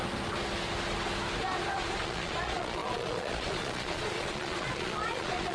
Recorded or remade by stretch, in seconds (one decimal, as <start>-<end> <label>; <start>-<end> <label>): 0.0-1.7 recorded; 1.7-5.5 remade